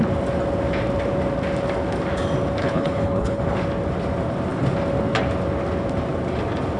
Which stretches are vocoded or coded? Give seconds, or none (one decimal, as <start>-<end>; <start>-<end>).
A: 2.6-3.4